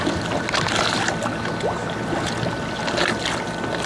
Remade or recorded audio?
recorded